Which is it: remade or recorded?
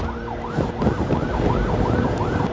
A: recorded